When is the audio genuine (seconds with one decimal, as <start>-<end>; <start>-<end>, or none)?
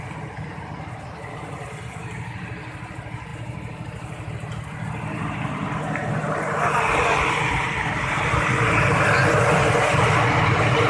0.0-10.9